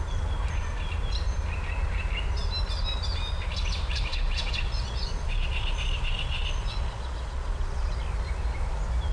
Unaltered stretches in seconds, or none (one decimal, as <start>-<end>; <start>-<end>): 0.0-4.1; 8.0-9.1

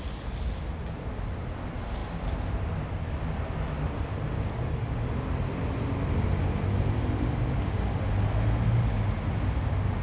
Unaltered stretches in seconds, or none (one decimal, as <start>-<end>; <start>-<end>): 0.0-10.0

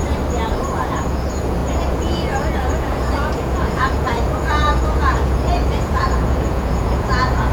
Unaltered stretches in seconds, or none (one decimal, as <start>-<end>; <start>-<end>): 0.0-0.7